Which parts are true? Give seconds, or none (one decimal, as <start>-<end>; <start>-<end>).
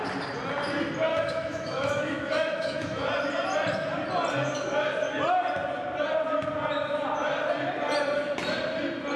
0.0-1.1; 3.0-9.2